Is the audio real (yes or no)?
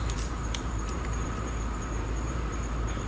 no